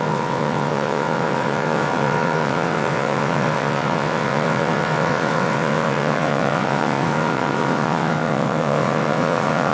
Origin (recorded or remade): remade